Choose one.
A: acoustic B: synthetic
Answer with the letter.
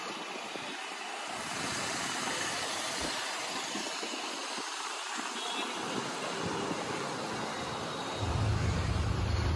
A